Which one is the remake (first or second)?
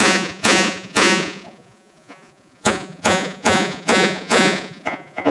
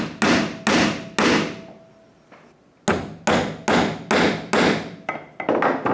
first